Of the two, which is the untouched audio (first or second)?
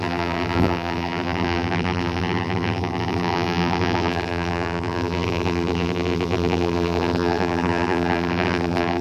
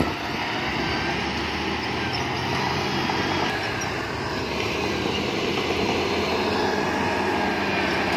second